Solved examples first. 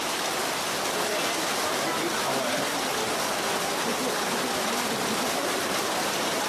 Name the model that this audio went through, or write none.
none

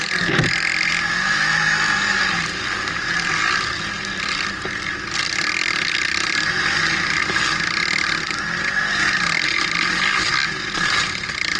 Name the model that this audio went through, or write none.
none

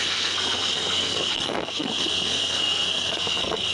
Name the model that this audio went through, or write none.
codec, SNAC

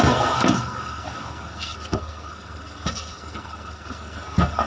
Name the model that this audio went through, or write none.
codec, SNAC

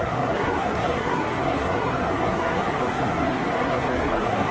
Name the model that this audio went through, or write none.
codec, SNAC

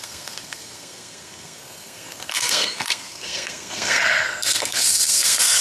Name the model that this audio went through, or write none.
codec, SNAC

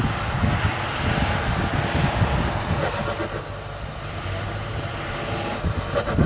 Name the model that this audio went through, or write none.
none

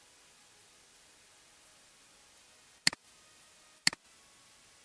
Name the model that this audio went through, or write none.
none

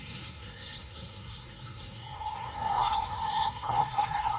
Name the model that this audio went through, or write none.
codec, SNAC